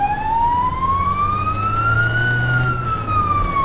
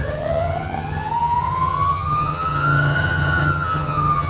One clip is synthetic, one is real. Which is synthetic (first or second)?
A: second